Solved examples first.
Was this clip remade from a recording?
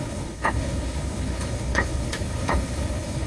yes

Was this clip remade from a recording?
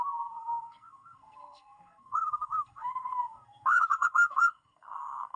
yes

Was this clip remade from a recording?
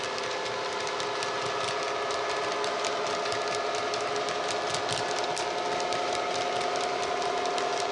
no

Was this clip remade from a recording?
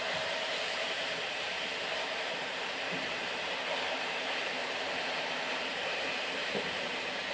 yes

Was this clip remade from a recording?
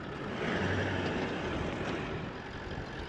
no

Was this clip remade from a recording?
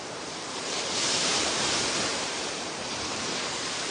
yes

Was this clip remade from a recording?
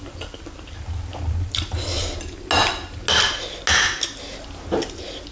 no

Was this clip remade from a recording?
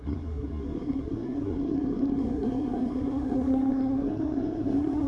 yes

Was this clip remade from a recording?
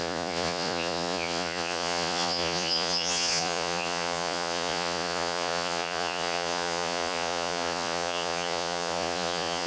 yes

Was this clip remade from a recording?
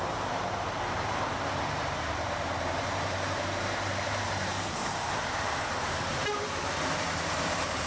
yes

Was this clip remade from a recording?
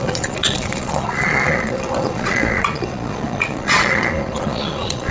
yes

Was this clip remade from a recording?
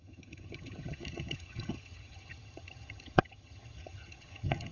yes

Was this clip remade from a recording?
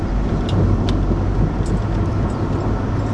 no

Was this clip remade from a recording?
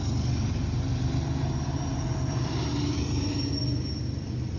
no